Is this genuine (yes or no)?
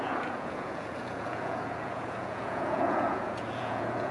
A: no